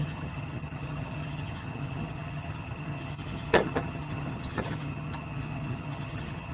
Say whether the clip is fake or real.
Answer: fake